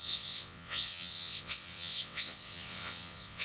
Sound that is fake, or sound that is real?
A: fake